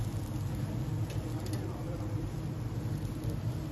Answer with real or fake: real